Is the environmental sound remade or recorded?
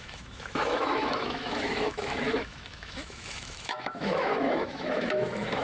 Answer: remade